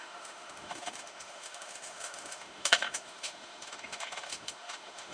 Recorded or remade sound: remade